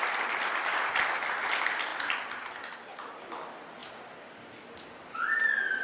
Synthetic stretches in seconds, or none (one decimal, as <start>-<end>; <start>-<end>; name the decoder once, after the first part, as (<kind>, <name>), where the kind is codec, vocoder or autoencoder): none